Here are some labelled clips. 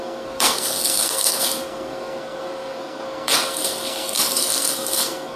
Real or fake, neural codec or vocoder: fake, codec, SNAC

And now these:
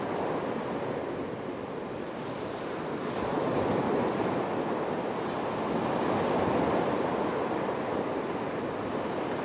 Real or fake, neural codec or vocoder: real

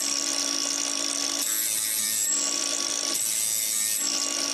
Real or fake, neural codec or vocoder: real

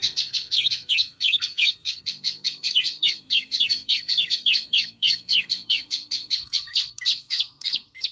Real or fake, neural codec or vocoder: fake, codec, SNAC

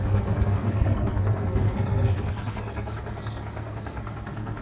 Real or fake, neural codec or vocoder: fake, codec, SNAC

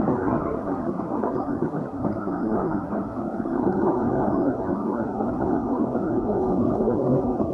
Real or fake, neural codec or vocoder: fake, codec, SNAC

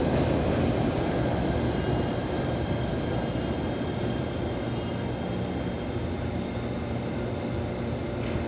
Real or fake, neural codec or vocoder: real